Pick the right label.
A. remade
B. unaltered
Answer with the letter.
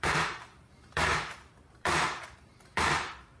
A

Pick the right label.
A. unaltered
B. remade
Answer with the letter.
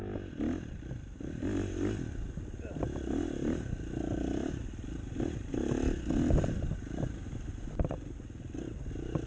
A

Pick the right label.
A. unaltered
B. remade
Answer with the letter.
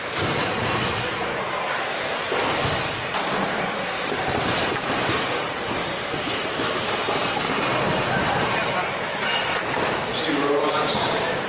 B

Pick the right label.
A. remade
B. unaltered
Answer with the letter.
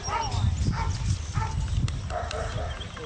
B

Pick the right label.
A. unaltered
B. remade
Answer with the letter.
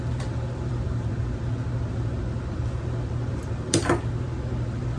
B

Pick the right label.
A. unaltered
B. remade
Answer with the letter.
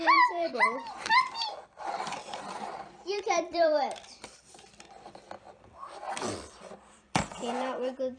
B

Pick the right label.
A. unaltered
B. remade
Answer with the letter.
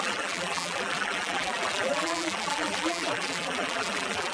B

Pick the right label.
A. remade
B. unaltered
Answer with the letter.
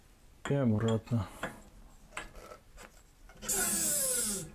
B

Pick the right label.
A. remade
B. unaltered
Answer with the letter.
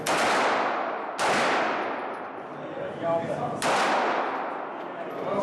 B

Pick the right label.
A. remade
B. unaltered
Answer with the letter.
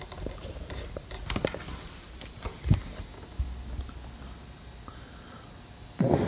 B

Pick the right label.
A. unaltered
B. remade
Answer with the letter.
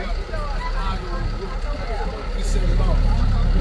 A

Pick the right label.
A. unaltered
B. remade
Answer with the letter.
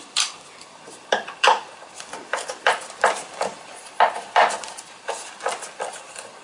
B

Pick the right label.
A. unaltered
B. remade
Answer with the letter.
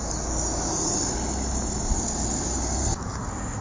A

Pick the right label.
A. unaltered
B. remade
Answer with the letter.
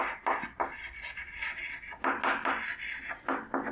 A